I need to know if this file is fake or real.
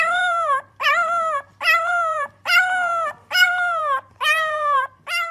fake